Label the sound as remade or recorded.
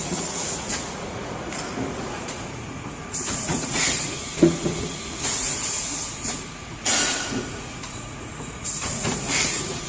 remade